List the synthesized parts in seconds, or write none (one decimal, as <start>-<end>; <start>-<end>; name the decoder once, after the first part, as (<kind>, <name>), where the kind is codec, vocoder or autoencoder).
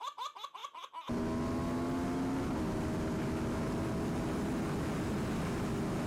none